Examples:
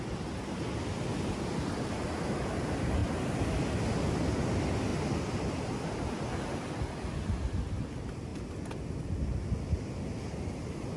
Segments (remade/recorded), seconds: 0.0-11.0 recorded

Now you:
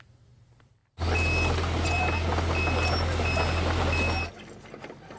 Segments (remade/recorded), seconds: 0.0-5.2 recorded

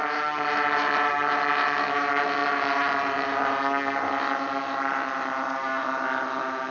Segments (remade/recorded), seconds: 0.0-6.7 recorded

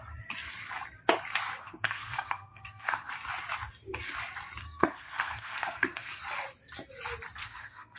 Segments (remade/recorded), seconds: 0.0-1.6 recorded; 1.6-3.1 remade; 3.1-4.6 recorded; 4.6-6.1 remade; 6.1-7.4 recorded; 7.4-8.0 remade

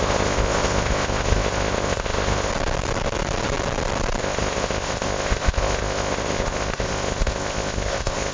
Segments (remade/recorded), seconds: 0.0-2.5 remade; 2.5-4.2 recorded; 4.2-8.3 remade

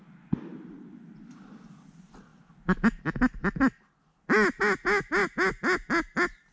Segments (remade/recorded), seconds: 0.0-6.5 recorded

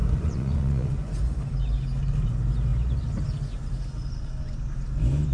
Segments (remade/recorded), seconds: 0.0-1.4 remade; 1.4-5.3 recorded

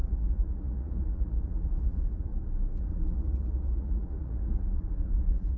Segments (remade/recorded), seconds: 0.0-2.3 remade; 2.3-2.8 recorded; 2.8-5.6 remade